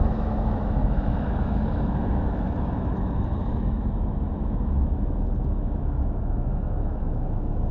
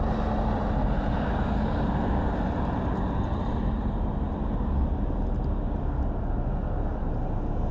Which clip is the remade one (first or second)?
first